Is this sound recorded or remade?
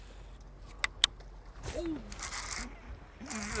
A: recorded